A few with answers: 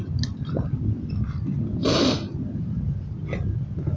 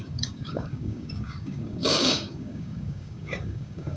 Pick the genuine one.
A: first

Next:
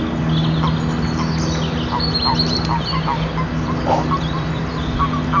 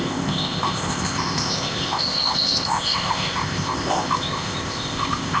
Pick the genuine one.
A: first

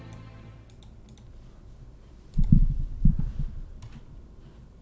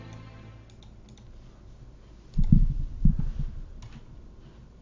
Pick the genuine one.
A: second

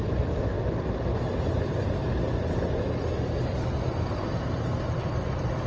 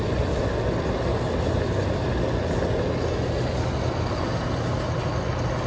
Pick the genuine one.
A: second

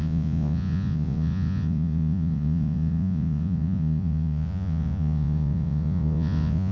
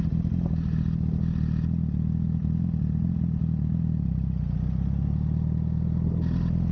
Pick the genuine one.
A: second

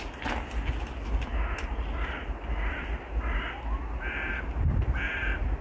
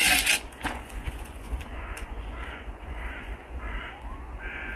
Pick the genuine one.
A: first